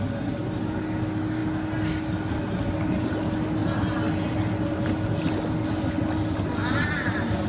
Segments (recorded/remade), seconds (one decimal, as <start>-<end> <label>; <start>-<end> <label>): 0.0-7.5 recorded